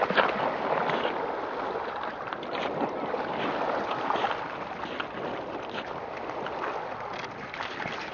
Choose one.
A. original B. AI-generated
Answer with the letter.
A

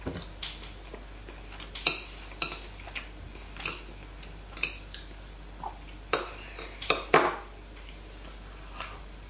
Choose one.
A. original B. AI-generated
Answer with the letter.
A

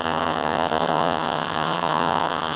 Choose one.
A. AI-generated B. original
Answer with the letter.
A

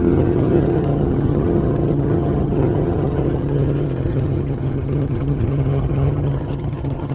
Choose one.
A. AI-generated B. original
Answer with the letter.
A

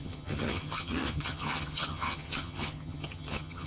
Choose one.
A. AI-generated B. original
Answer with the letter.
A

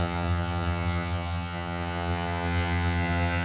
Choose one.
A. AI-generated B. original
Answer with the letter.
A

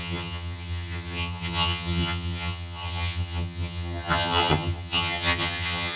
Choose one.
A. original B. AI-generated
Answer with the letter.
B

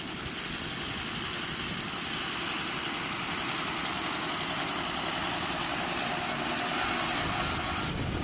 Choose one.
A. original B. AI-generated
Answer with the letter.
A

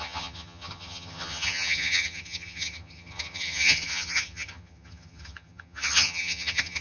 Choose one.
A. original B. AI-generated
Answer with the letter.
B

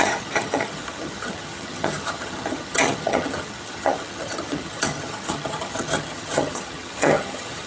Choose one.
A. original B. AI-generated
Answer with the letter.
B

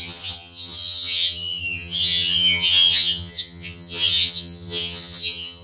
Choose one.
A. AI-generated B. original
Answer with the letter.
A